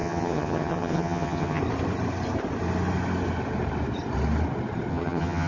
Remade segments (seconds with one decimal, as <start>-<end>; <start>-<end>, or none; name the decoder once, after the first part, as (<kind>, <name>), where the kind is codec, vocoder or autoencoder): 0.0-1.6 (vocoder, HiFi-GAN); 4.9-5.5